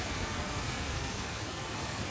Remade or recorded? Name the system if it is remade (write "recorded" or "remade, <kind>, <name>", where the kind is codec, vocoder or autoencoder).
remade, codec, SNAC